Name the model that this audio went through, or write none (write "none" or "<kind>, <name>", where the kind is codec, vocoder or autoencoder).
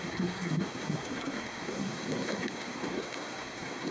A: codec, SNAC